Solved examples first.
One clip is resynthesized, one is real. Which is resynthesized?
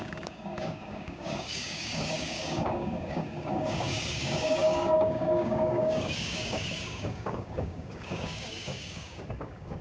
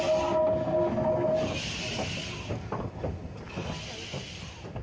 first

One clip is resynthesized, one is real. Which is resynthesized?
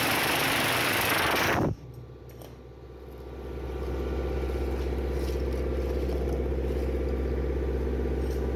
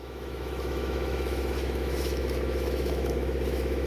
second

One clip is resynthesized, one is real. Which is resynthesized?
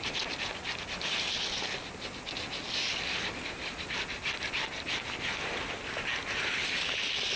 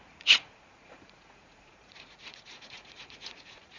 second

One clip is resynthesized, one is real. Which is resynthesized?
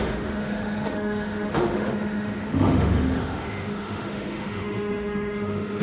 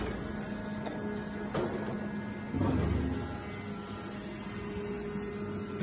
first